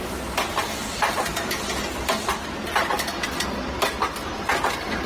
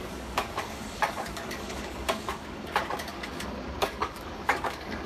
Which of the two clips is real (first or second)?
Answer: first